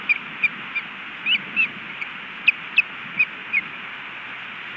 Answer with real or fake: real